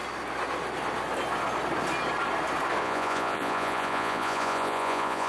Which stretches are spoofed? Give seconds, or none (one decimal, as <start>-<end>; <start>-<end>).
2.8-5.3